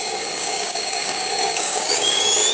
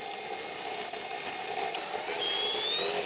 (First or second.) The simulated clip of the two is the first